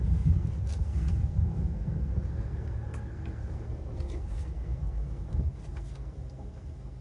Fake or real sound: fake